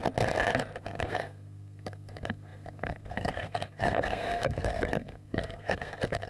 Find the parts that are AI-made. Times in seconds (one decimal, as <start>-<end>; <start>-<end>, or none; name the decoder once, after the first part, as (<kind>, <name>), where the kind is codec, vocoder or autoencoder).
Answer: 0.8-6.3 (codec, SNAC)